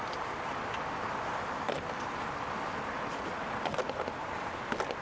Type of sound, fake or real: real